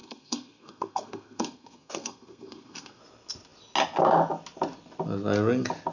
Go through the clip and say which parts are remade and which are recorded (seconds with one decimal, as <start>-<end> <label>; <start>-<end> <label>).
0.0-3.0 remade; 3.0-5.9 recorded